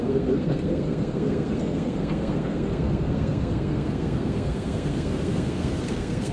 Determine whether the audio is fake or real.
fake